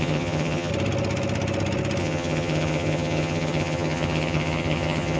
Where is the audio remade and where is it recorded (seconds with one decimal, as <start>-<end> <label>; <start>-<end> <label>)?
0.0-0.7 remade; 0.7-2.0 recorded; 2.0-5.2 remade